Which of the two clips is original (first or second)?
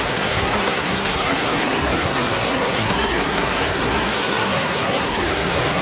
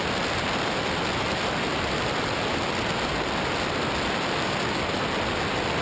second